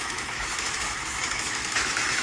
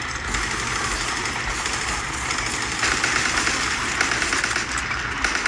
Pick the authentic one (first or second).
second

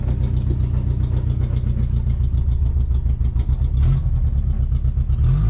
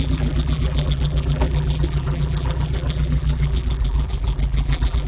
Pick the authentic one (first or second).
first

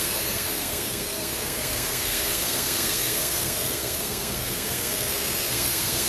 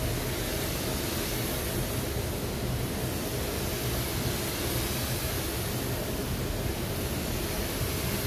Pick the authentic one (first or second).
second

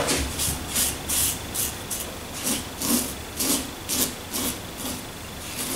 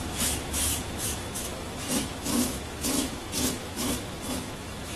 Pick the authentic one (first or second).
first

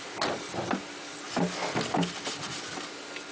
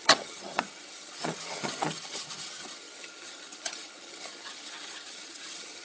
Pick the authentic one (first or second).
first